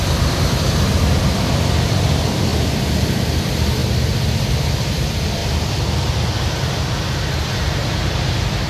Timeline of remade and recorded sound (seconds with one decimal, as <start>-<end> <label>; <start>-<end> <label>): 0.0-3.8 remade; 3.8-4.5 recorded; 4.5-5.4 remade; 5.4-6.4 recorded; 6.4-8.7 remade